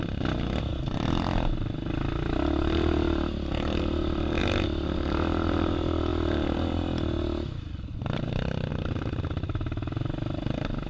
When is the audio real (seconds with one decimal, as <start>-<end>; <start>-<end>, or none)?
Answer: 0.0-10.9